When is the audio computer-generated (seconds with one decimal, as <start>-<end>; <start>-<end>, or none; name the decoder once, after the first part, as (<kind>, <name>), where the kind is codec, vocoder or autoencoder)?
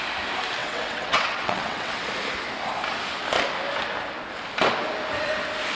0.6-2.1 (vocoder, WaveNeXt)